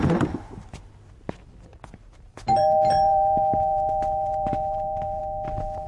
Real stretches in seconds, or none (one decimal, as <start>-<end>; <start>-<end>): 0.0-1.7; 5.2-5.9